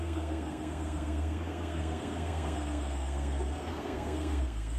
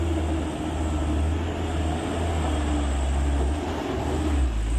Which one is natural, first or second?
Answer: second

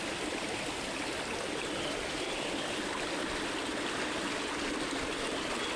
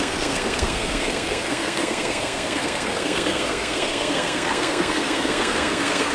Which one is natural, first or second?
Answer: first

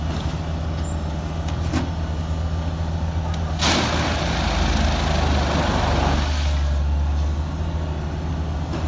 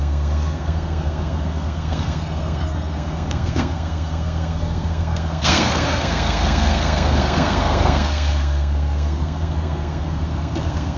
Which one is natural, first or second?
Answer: first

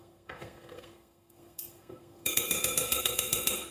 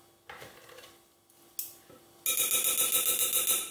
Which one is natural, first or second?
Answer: second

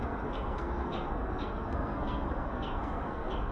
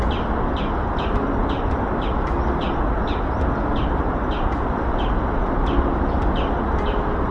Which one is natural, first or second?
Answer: second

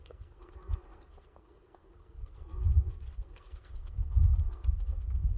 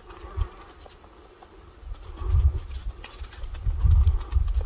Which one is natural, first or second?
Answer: second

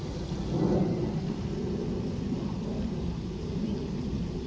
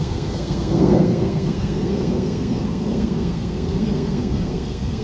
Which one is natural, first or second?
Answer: first